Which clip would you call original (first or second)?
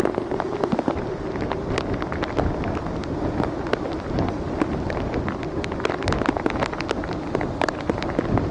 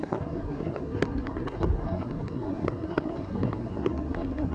first